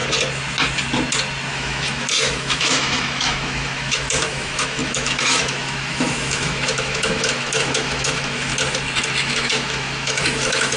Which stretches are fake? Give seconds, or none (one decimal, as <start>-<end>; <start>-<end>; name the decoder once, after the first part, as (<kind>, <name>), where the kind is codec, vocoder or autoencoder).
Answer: 1.5-8.5 (autoencoder, DAC-VAE); 9.2-10.8